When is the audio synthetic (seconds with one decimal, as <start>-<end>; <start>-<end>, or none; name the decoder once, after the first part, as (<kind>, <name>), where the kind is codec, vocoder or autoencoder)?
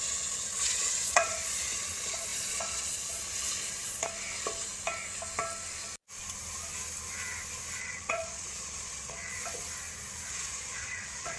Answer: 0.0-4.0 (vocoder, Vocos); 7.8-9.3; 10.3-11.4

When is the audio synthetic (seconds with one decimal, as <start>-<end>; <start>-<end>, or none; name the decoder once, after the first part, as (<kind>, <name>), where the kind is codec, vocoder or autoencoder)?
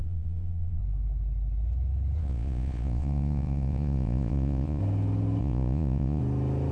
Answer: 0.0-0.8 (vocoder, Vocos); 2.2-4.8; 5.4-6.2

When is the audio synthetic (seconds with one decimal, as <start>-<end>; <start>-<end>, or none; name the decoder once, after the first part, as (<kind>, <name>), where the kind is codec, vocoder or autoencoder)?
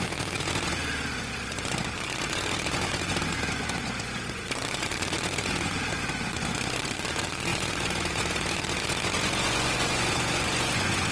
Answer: 0.0-11.1 (vocoder, Vocos)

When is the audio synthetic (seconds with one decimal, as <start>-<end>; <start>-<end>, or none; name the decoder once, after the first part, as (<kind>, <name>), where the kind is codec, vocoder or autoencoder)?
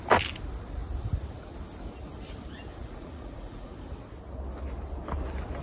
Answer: 2.8-3.7 (vocoder, Vocos)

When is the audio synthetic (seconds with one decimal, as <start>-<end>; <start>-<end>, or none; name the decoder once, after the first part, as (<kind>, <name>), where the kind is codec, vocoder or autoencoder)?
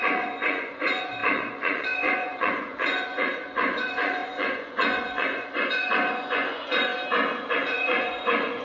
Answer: 0.0-6.9 (vocoder, Vocos); 7.5-8.6